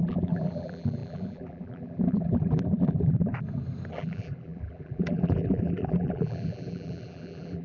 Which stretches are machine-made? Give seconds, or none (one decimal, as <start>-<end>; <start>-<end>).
0.0-3.3; 3.9-7.6